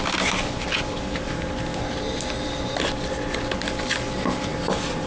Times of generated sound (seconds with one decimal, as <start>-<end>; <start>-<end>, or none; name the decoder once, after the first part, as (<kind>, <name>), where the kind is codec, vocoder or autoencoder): none